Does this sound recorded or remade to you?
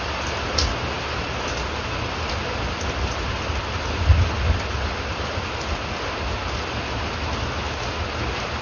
recorded